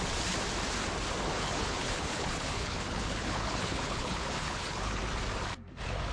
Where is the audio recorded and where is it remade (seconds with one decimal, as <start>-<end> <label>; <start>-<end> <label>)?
0.0-1.3 recorded; 1.3-5.0 remade; 5.0-6.1 recorded